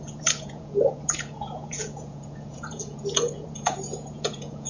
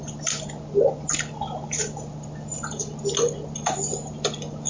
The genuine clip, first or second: second